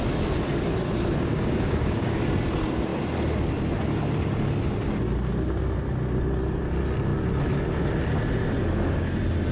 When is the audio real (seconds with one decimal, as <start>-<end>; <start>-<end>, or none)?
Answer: 0.0-1.3; 2.2-9.5